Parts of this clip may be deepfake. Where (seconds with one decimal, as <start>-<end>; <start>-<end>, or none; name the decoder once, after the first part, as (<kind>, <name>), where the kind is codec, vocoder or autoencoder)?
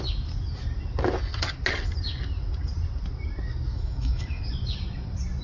3.7-4.4 (autoencoder, DAC-VAE)